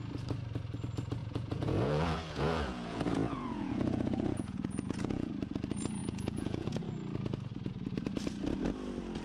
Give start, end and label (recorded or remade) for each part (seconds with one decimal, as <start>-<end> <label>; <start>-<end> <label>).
0.0-1.2 recorded; 1.2-5.3 remade; 5.3-6.0 recorded; 6.0-6.8 remade; 6.8-9.2 recorded